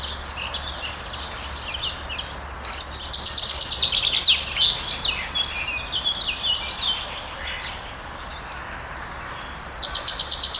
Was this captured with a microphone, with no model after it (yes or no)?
yes